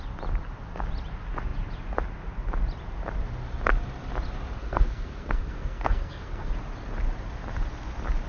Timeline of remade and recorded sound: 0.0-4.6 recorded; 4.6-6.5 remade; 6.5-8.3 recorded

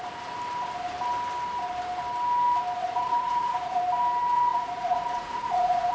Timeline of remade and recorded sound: 0.0-2.8 recorded; 2.8-3.8 remade; 3.8-4.5 recorded; 4.5-5.9 remade

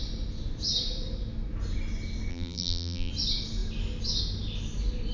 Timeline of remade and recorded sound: 0.0-2.3 recorded; 2.3-3.1 remade; 3.1-5.1 recorded

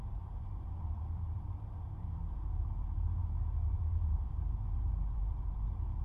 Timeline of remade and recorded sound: 0.0-6.0 remade

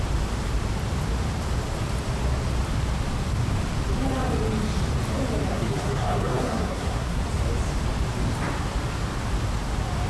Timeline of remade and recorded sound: 0.0-5.5 recorded; 5.5-7.2 remade; 7.2-10.1 recorded

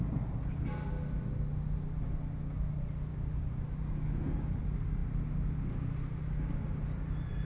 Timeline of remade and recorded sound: 0.0-3.1 recorded; 3.1-4.6 remade; 4.6-7.4 recorded

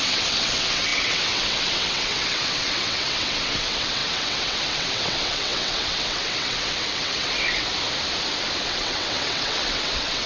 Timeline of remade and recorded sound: 0.0-7.7 remade; 7.7-8.6 recorded; 8.6-10.3 remade